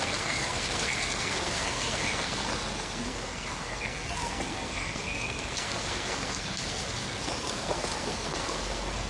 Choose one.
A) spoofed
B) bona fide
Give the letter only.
A